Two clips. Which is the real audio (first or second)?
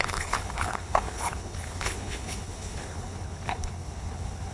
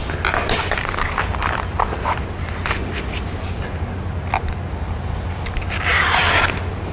second